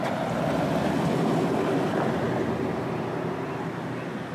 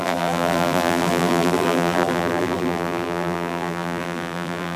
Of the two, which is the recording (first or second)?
first